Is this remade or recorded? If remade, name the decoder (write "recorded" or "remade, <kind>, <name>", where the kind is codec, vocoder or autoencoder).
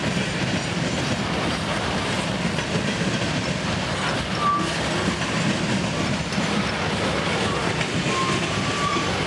recorded